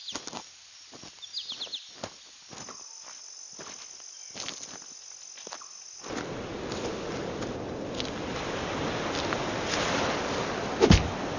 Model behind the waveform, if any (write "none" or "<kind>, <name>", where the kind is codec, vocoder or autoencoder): none